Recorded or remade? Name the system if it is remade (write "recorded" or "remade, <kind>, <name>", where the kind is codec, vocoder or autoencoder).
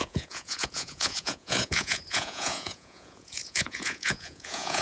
remade, vocoder, Vocos